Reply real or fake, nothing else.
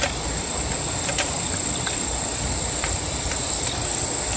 fake